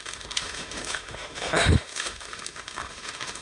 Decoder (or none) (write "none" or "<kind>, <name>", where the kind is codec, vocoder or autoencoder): autoencoder, DAC-VAE